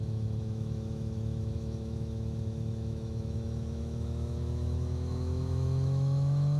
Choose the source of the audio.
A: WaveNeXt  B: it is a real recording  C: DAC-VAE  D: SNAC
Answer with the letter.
C